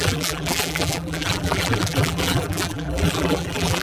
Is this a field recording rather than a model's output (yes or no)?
no